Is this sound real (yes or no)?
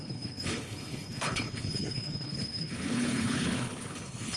no